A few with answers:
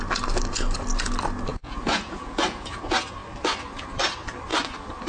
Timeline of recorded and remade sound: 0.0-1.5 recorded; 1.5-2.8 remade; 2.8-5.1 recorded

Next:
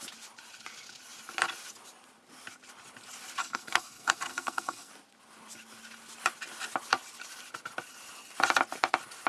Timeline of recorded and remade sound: 0.0-3.4 recorded; 3.4-4.9 remade; 4.9-9.3 recorded

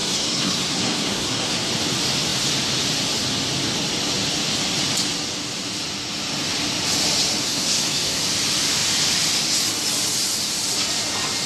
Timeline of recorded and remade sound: 0.0-1.7 remade; 1.7-7.4 recorded; 7.4-8.2 remade; 8.2-11.5 recorded

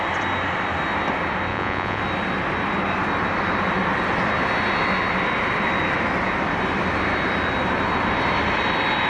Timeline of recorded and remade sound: 0.0-1.5 recorded; 1.5-2.0 remade; 2.0-9.1 recorded